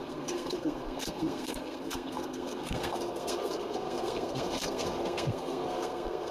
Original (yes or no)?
no